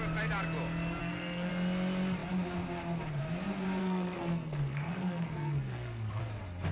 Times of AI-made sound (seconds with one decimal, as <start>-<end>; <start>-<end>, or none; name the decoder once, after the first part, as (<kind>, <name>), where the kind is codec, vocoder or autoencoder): 1.0-1.5 (codec, SNAC); 3.8-6.2